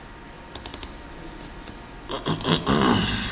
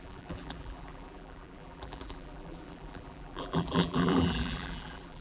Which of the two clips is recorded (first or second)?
first